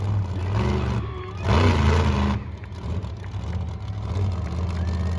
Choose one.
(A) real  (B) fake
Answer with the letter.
A